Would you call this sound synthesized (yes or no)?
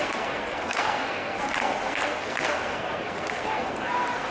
yes